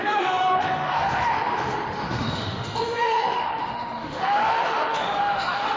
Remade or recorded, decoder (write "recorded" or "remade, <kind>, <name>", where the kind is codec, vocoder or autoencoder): remade, autoencoder, DAC-VAE